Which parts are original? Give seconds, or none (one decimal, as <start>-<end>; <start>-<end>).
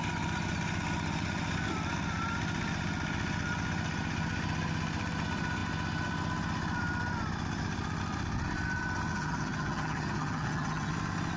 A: 0.0-9.1; 10.9-11.4